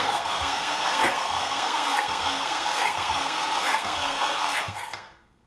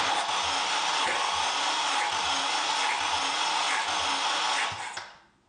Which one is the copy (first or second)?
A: first